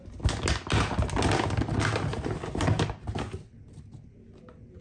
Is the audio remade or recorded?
recorded